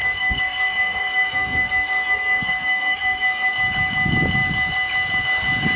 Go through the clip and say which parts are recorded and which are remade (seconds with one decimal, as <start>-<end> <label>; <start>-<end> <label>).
0.0-3.5 remade; 3.5-5.8 recorded